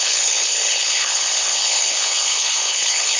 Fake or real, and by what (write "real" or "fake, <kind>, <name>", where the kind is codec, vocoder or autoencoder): fake, codec, HILCodec